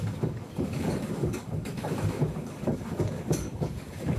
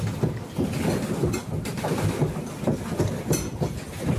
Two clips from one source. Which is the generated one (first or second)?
first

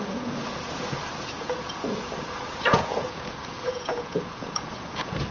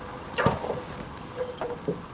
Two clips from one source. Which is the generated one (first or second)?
first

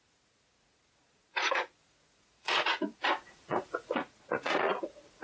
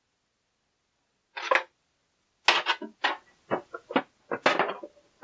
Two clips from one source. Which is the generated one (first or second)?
first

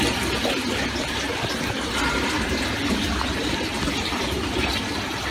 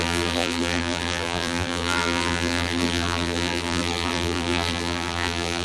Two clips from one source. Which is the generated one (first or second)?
second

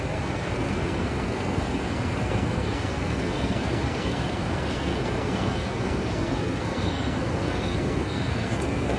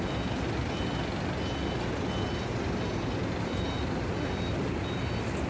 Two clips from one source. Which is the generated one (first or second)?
first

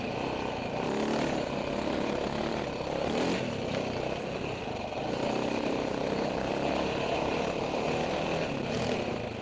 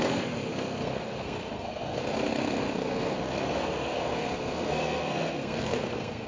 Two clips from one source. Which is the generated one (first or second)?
second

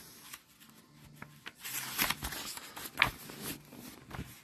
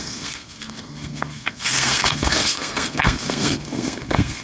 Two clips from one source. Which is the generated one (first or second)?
second